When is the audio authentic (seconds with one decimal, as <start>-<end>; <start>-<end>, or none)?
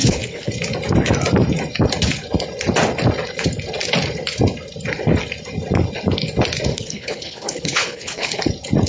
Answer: 0.5-6.7; 8.4-8.9